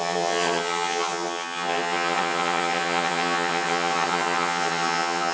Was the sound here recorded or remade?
remade